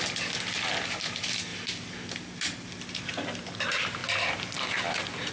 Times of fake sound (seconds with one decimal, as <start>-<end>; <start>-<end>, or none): none